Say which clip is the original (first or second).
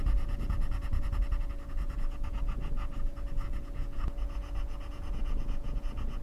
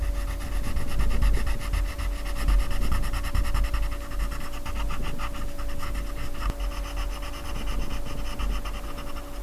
second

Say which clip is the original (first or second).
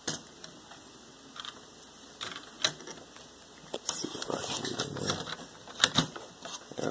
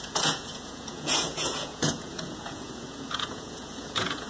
first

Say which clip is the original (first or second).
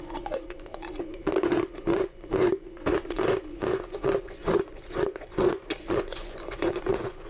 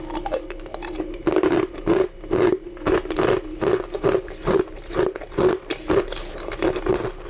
second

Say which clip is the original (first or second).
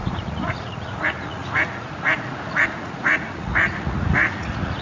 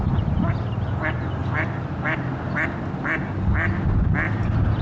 second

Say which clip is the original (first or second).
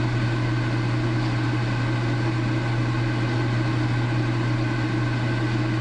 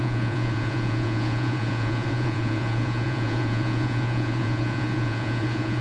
first